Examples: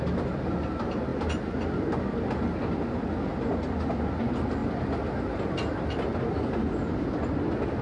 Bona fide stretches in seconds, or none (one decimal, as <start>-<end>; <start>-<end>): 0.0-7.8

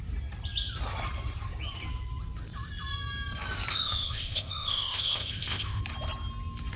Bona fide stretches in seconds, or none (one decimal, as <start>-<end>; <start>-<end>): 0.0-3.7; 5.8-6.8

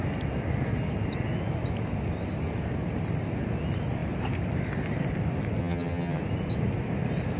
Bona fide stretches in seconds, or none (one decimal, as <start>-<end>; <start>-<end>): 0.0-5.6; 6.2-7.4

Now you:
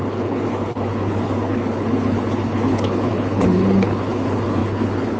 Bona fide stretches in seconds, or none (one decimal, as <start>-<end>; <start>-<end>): none

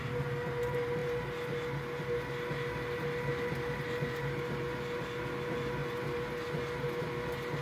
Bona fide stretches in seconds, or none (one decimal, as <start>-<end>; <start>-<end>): 0.0-7.6

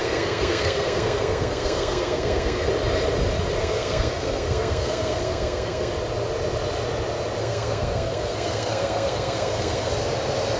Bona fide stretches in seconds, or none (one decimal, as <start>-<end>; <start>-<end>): 2.7-3.6; 5.9-7.4; 9.9-10.6

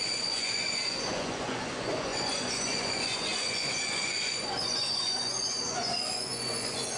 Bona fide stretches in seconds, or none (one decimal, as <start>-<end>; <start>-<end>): none

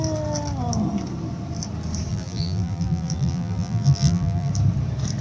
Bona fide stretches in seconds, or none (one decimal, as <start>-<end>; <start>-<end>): 0.0-2.1; 4.5-5.2